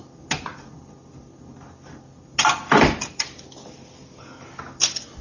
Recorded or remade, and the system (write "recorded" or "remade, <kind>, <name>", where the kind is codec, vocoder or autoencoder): recorded